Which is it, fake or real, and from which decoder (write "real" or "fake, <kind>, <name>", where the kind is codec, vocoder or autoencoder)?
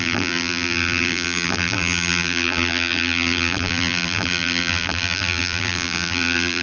fake, vocoder, BigVGAN v2